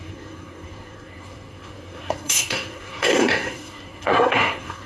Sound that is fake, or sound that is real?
fake